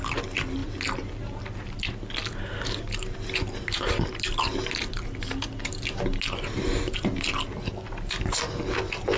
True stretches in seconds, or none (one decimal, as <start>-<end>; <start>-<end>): 0.0-9.2